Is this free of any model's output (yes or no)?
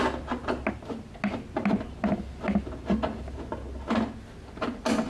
yes